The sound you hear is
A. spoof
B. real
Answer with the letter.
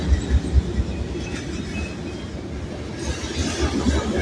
B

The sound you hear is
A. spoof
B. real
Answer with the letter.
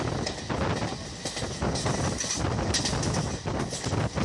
B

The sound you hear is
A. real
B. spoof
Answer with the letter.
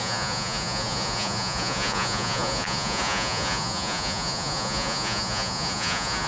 B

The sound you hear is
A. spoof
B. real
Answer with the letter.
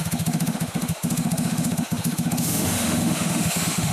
A